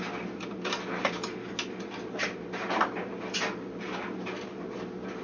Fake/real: real